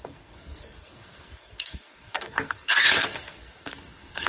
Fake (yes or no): yes